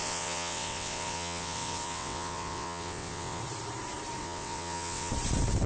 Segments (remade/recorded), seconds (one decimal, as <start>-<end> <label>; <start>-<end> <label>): 0.0-3.4 remade; 3.4-4.2 recorded; 4.2-5.1 remade; 5.1-5.7 recorded